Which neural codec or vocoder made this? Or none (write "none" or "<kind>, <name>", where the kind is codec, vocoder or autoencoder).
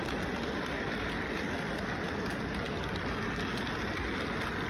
none